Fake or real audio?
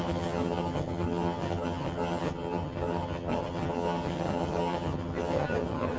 fake